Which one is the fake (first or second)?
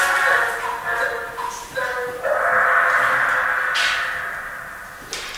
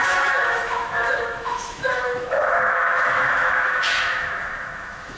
second